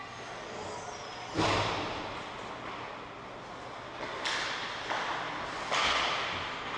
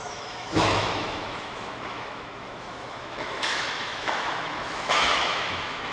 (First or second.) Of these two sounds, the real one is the first